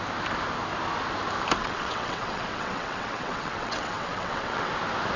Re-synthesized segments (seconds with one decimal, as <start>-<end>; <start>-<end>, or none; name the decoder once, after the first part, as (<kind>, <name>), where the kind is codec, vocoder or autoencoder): 1.6-4.7 (vocoder, WaveNeXt)